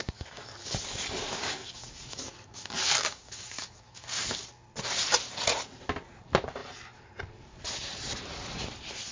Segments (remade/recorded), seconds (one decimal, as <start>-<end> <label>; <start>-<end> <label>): 0.0-4.4 remade; 4.4-9.1 recorded